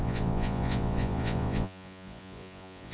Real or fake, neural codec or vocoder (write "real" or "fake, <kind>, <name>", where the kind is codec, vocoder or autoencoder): fake, vocoder, Vocos